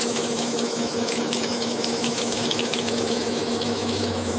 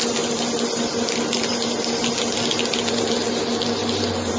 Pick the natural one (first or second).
second